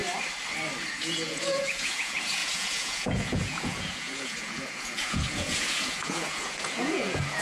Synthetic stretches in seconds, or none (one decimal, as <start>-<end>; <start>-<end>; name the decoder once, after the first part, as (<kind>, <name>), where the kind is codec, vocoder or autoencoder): 0.9-7.4 (vocoder, Vocos)